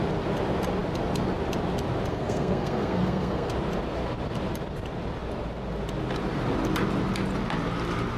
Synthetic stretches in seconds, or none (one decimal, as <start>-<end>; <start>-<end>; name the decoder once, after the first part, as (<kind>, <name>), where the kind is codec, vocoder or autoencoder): 2.1-3.5 (codec, SNAC)